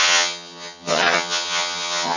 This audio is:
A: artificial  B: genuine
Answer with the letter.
A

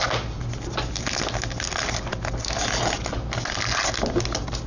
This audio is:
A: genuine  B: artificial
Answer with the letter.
A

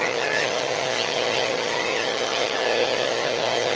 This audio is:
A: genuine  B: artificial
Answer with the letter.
B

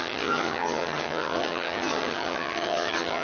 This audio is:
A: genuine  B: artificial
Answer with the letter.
B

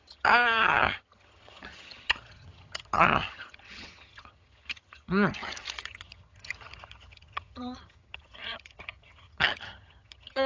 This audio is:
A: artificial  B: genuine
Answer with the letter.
A